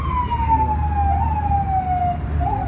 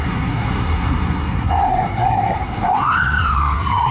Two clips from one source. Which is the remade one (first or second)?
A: second